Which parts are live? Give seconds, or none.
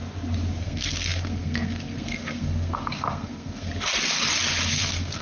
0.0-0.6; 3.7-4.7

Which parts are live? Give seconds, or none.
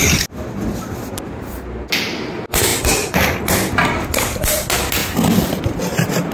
0.0-6.3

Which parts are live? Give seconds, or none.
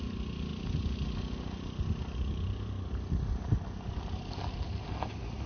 0.0-5.5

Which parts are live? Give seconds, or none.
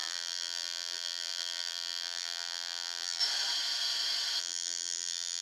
3.2-4.4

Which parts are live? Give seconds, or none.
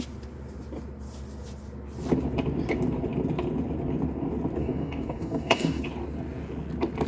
0.0-4.6; 5.8-7.1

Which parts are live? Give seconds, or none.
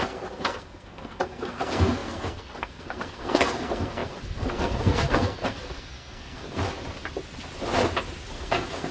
6.6-8.3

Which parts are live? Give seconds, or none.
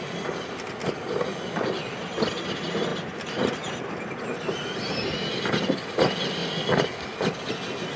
0.0-8.0